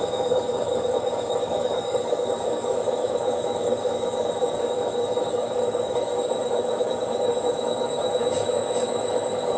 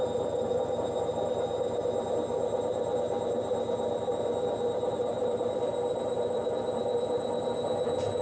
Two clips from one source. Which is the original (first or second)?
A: second